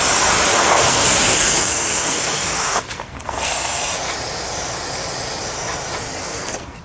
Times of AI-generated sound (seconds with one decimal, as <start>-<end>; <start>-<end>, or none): 0.5-3.8; 6.2-6.8